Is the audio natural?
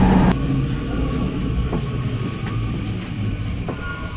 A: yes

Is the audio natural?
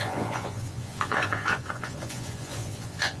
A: no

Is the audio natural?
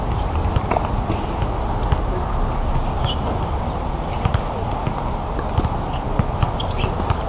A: yes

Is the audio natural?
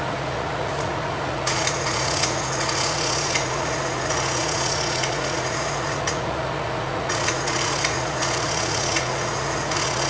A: no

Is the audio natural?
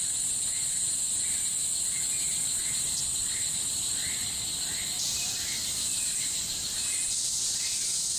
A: yes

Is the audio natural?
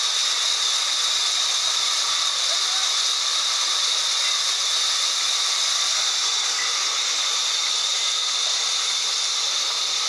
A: yes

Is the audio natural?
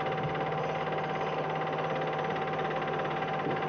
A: yes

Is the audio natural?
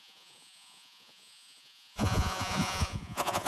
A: no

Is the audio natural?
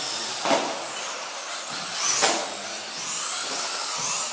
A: yes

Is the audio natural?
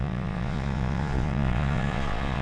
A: no